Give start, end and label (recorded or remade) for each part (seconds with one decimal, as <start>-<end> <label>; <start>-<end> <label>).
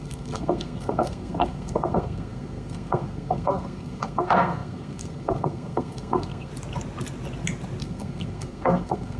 0.0-6.5 remade; 6.5-7.8 recorded; 7.8-9.2 remade